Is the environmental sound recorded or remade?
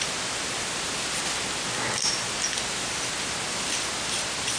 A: recorded